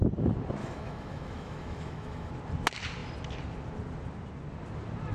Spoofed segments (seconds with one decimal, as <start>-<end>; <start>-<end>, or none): 0.6-2.3